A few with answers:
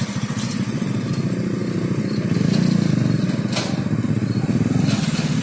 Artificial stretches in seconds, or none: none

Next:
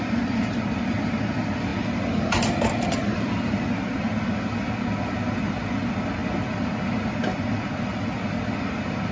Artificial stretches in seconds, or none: none

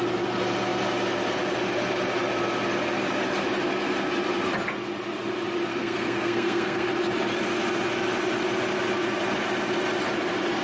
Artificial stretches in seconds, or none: 5.7-6.9 (codec, SNAC)

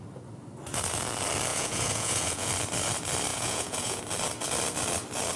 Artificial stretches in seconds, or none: 1.5-2.5 (vocoder, Vocos); 3.3-4.0

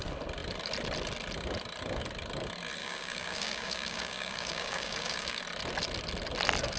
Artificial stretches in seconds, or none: 2.8-5.4 (codec, DAC)

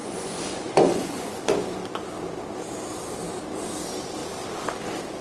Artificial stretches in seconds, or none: 0.0-1.4 (vocoder, Vocos)

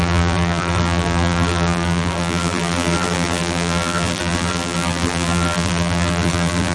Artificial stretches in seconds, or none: 0.0-6.7 (vocoder, BigVGAN v2)